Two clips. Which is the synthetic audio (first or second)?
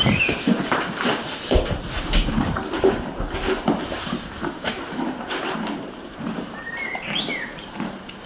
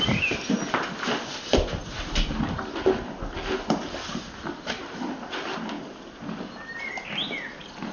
first